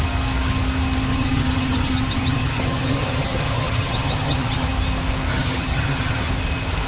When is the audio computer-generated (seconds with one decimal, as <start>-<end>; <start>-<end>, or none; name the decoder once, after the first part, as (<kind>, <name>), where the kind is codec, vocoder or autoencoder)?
1.1-4.7 (vocoder, HiFi-GAN); 5.3-6.3